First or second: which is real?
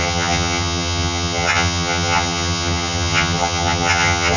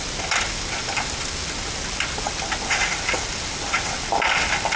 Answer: second